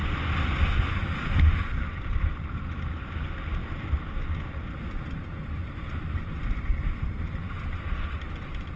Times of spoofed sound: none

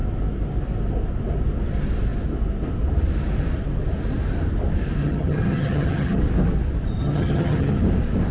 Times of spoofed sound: 5.0-6.2 (vocoder, HiFi-GAN); 7.0-7.8

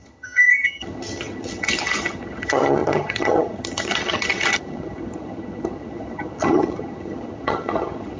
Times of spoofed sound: 0.0-8.2 (vocoder, HiFi-GAN)

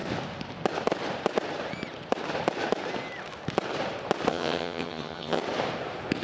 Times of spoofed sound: 4.3-5.4 (vocoder, HiFi-GAN)

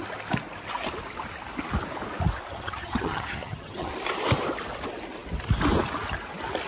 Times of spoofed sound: 2.5-3.9 (vocoder, HiFi-GAN)

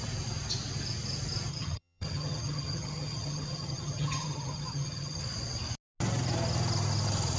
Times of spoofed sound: 1.5-5.2 (vocoder, HiFi-GAN)